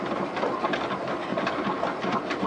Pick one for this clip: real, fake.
real